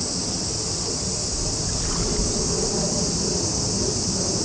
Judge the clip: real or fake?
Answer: real